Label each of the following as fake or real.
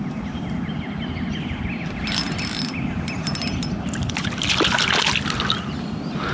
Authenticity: real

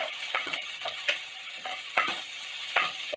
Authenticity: fake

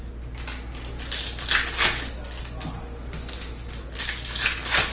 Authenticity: real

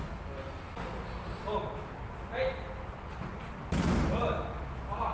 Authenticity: real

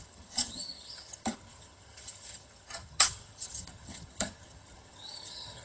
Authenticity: fake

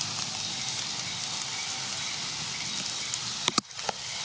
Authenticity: real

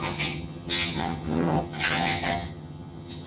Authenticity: fake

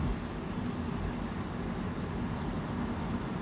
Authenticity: real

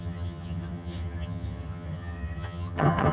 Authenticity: fake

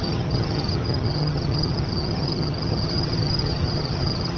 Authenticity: fake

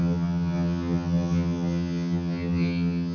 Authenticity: fake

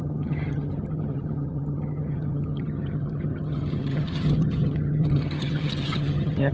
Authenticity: fake